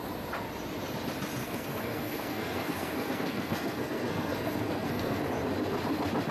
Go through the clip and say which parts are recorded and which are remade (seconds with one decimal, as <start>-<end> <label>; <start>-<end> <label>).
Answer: 0.0-1.4 recorded; 1.4-5.2 remade; 5.2-6.3 recorded